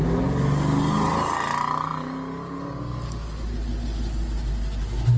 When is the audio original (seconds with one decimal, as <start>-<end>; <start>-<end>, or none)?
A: 0.0-5.2